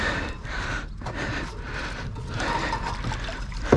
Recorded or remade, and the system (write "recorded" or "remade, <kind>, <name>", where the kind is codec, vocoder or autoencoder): remade, vocoder, BigVGAN v2